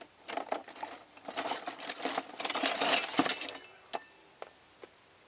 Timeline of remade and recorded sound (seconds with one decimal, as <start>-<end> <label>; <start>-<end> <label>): 0.0-5.3 recorded